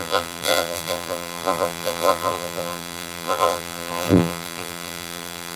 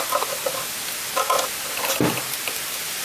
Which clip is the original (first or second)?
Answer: second